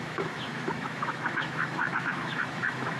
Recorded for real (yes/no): no